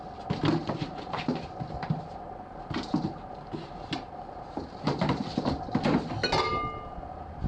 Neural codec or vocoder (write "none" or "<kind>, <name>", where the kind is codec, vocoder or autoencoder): none